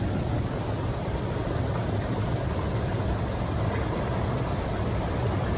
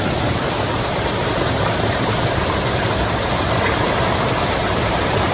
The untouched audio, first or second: first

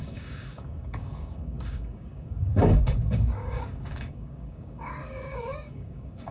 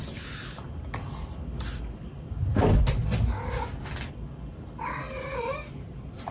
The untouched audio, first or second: second